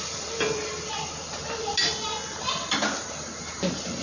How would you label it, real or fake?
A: real